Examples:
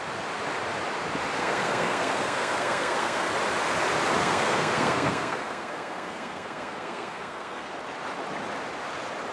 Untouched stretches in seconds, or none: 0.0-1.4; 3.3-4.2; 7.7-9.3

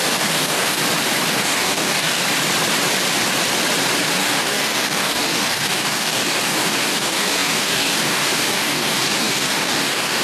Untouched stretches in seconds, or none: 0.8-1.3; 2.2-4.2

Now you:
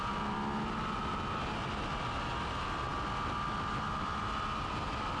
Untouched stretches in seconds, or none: 0.0-5.2

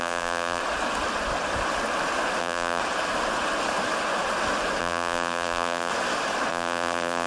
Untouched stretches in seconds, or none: 0.6-2.4; 2.8-4.8; 5.9-6.5

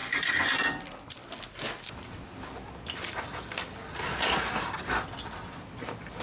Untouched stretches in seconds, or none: 0.5-6.2

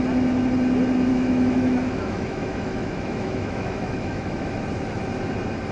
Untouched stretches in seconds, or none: 0.0-1.1; 4.5-5.7